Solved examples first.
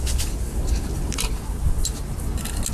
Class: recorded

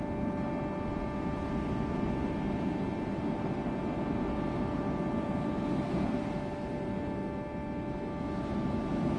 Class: recorded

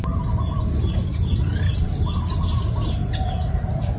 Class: recorded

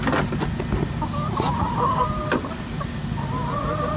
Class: recorded